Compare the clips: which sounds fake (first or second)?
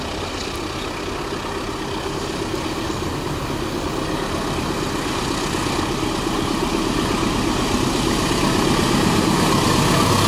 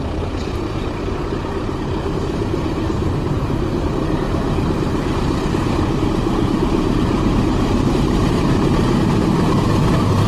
second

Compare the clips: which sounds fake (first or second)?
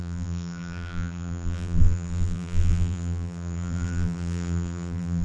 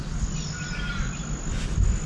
first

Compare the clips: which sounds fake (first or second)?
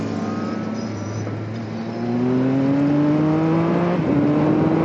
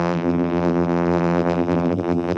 second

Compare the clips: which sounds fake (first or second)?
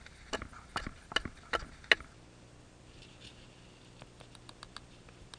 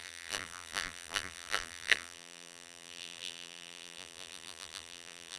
second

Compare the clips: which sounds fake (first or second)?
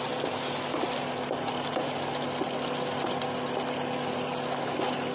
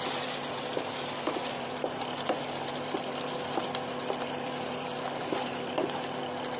second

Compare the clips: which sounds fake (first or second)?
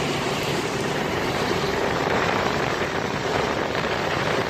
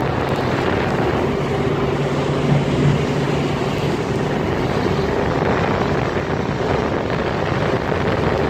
first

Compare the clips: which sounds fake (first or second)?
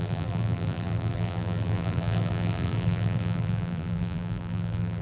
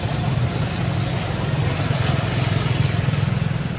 first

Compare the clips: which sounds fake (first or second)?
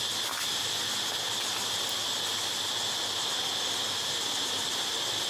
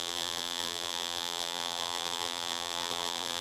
second